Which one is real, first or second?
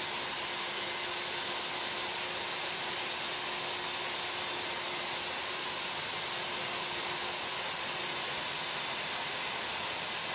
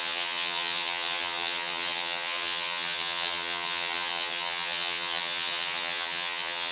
first